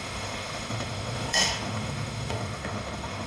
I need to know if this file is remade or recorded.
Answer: remade